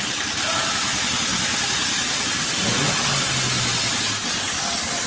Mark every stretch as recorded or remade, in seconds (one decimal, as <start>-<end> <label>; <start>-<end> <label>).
0.0-5.1 recorded